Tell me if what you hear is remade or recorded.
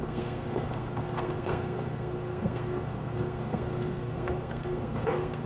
remade